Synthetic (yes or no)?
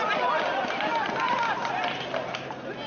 no